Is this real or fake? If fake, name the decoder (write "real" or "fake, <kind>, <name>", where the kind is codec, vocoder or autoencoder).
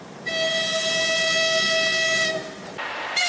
real